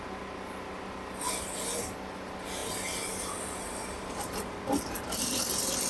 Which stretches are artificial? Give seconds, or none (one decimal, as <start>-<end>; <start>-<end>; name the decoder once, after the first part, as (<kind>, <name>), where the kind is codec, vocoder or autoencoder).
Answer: none

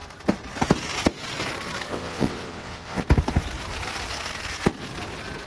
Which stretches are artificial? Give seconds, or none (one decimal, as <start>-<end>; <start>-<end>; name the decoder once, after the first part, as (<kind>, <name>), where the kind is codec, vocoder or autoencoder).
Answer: 1.9-3.0 (vocoder, WaveNeXt)

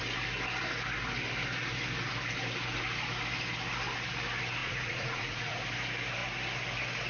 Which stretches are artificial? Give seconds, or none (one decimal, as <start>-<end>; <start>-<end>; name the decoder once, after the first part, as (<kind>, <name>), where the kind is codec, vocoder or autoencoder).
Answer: 4.6-5.6 (vocoder, Vocos)

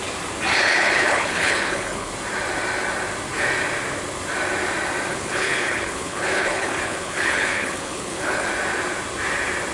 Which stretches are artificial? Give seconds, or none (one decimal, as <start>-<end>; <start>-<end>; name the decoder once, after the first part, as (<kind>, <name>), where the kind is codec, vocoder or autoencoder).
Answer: 0.5-2.1 (codec, HILCodec); 5.1-8.5

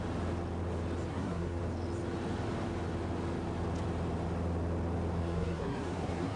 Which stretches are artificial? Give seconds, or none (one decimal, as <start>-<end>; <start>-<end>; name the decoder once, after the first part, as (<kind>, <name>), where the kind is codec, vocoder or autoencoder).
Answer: 1.1-1.6 (codec, SNAC); 5.2-6.4